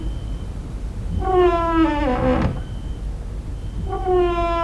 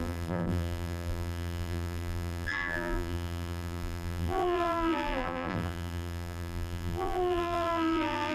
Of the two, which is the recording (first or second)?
first